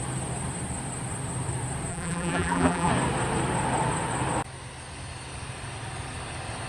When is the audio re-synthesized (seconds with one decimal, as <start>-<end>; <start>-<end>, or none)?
1.9-2.9